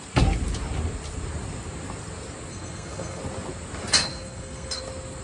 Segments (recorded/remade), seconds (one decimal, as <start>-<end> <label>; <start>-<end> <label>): 0.0-2.5 recorded; 2.5-3.2 remade; 3.2-4.1 recorded; 4.1-4.8 remade; 4.8-5.2 recorded